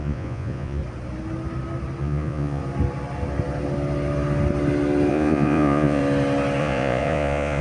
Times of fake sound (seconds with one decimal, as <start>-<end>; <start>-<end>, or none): 0.0-0.8; 2.0-2.6; 5.1-6.0; 6.6-7.6